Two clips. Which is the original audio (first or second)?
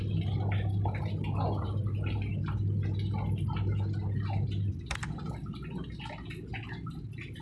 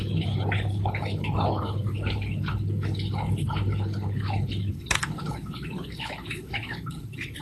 first